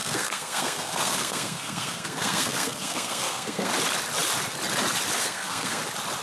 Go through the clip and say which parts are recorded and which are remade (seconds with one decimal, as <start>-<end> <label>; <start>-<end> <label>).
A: 0.0-3.7 remade; 3.7-5.2 recorded; 5.2-5.8 remade; 5.8-6.2 recorded